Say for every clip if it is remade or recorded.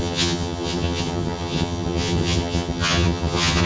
remade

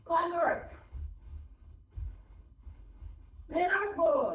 remade